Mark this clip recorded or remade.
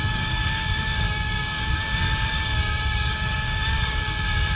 remade